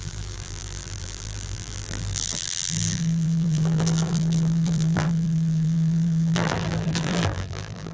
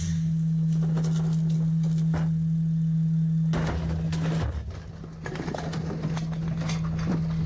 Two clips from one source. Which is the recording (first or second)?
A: second